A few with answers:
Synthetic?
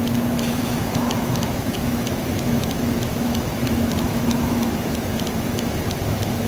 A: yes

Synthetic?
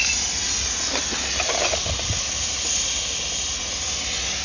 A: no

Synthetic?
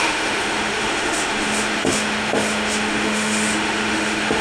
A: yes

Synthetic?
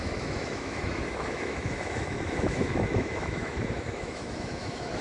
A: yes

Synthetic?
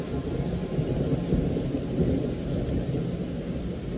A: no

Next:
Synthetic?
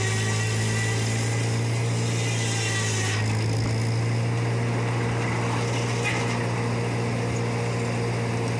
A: no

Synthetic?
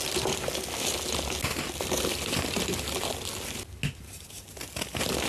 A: no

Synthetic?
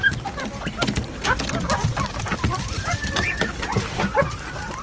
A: no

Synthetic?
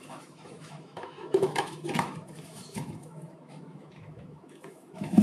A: yes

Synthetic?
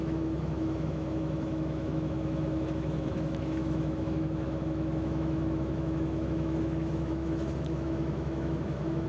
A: yes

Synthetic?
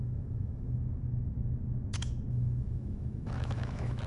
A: yes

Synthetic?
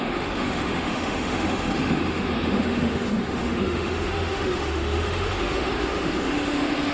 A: yes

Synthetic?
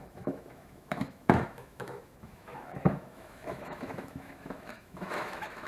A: yes